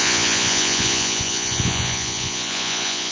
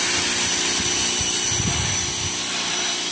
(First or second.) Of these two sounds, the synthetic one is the first